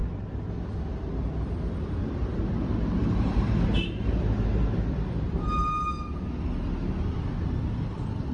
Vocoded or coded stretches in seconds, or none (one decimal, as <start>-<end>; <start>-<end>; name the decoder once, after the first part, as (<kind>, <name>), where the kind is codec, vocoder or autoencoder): 2.0-3.5 (vocoder, BigVGAN v2)